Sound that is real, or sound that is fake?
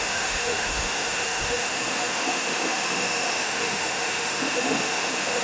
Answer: fake